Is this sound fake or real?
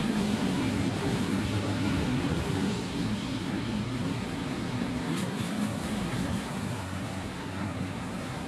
fake